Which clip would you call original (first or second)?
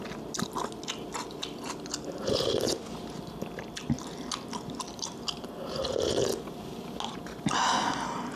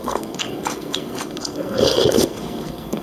first